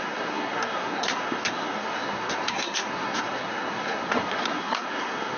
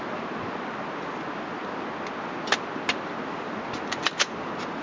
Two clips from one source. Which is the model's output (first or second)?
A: first